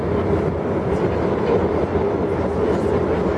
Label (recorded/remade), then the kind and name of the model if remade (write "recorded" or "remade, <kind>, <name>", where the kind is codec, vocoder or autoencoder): recorded